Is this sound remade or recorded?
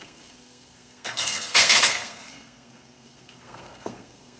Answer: remade